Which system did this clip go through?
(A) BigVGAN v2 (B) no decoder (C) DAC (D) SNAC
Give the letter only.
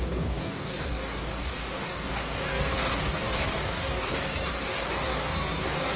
C